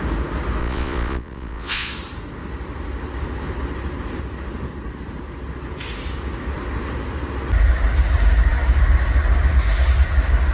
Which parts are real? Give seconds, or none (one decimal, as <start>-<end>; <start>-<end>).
0.0-0.6; 1.9-10.5